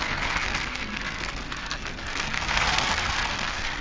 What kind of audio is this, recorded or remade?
remade